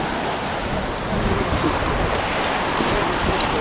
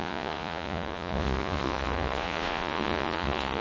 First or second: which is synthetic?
second